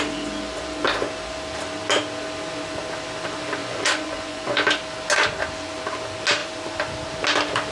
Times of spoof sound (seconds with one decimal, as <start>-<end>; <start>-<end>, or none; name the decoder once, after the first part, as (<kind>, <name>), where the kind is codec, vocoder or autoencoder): 3.6-4.7 (vocoder, Vocos)